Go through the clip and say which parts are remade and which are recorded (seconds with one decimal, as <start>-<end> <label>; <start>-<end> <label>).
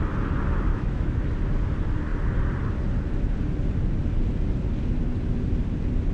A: 0.0-0.7 recorded; 0.7-1.4 remade; 1.4-6.1 recorded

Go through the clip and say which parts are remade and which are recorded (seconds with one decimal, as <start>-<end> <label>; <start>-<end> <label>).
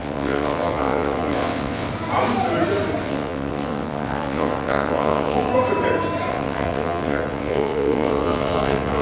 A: 0.0-1.9 remade; 1.9-3.0 recorded; 3.0-5.5 remade; 5.5-6.3 recorded; 6.3-9.0 remade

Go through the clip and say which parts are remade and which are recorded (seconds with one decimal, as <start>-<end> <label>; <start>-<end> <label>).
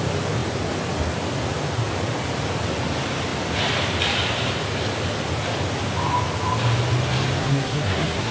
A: 0.0-7.4 recorded; 7.4-8.3 remade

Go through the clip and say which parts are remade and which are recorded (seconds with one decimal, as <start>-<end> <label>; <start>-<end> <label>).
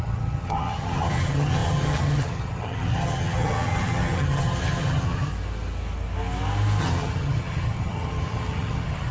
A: 0.0-5.3 remade; 5.3-6.8 recorded; 6.8-9.1 remade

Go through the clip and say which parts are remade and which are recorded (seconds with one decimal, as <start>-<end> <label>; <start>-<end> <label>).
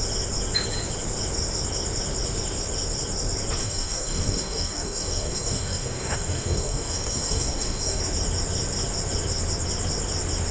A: 0.0-3.6 recorded; 3.6-8.0 remade; 8.0-10.5 recorded